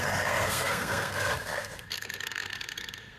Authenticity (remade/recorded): remade